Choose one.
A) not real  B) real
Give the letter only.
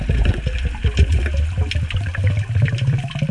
B